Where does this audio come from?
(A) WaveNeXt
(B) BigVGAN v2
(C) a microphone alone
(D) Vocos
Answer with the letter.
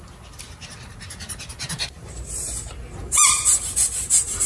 B